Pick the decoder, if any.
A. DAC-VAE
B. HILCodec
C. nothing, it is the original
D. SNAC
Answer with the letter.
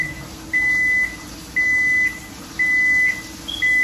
C